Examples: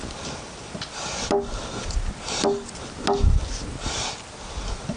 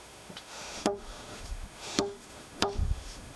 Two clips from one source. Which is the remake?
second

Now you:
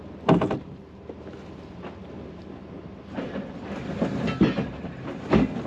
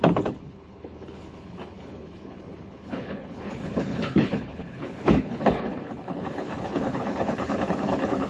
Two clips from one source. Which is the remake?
second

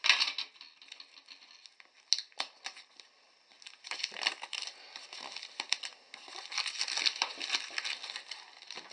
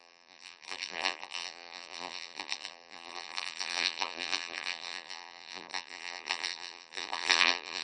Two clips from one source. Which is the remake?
second